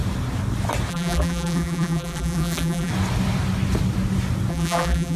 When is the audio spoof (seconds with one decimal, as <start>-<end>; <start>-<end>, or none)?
0.9-2.9; 4.5-5.2